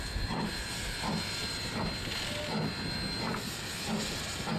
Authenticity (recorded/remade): recorded